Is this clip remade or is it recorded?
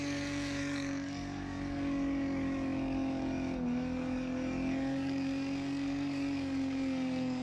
remade